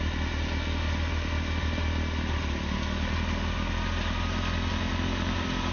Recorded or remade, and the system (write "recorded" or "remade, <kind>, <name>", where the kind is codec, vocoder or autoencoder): recorded